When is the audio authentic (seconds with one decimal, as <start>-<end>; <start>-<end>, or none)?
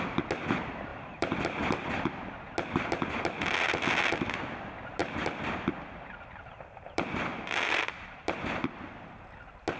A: 0.0-0.9; 1.7-5.0; 8.9-9.8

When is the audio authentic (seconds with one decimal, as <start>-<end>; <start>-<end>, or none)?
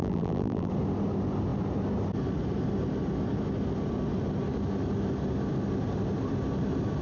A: 0.7-7.0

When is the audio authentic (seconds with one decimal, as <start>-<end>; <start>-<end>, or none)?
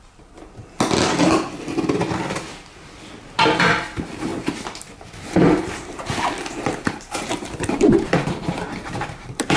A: 0.6-3.4; 4.3-5.2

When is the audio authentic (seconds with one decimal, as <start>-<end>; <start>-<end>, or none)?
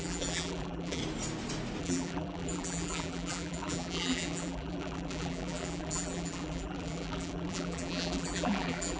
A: 1.0-1.8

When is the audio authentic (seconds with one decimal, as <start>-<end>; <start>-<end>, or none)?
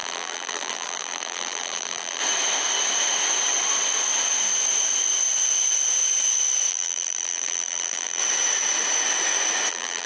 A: 2.2-6.7; 8.2-9.7